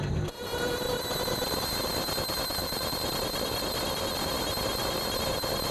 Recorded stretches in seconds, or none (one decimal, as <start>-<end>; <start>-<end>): 0.0-2.6; 4.3-5.7